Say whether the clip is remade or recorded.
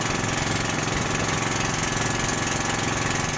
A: recorded